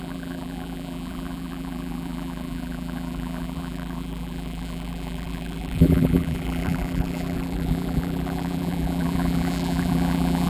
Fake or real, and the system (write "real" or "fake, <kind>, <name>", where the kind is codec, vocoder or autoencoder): fake, vocoder, BigVGAN v2